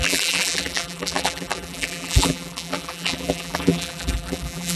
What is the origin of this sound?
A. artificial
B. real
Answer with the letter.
A